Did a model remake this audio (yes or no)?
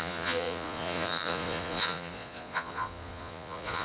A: yes